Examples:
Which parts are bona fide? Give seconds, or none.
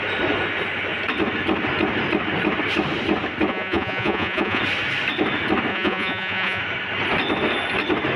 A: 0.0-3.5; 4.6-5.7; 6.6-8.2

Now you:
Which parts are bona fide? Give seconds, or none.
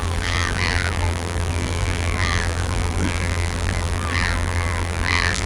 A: none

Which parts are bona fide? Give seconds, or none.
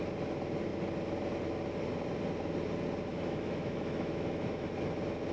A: 0.0-3.1; 4.7-5.3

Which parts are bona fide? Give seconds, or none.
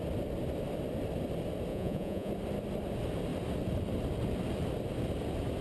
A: 0.0-1.7; 2.3-5.6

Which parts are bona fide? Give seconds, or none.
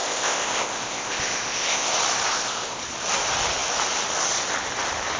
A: 1.9-2.3; 2.8-5.2